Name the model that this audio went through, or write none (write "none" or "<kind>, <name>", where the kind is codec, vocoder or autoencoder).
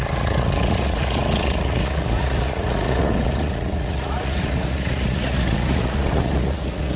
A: vocoder, Vocos